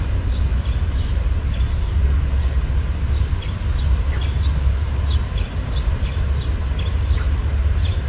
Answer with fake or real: real